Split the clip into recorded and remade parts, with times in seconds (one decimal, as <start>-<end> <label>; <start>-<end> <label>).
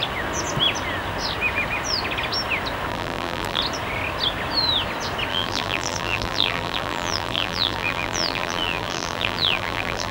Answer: 0.0-2.9 recorded; 2.9-3.6 remade; 3.6-5.3 recorded; 5.3-10.1 remade